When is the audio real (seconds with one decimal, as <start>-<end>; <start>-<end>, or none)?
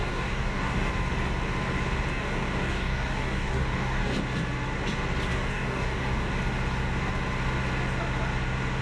0.9-2.1; 4.2-5.3; 6.3-8.8